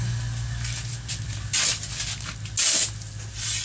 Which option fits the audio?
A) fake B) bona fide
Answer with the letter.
B